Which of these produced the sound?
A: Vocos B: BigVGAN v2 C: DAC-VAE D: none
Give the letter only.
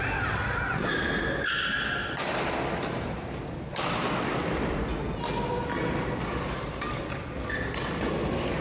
D